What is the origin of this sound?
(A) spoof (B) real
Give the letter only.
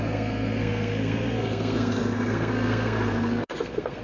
A